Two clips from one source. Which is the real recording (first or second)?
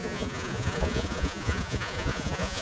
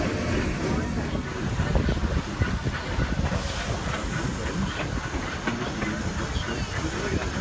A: second